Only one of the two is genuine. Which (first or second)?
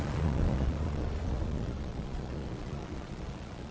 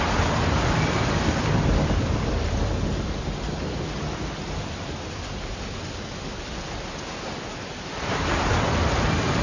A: second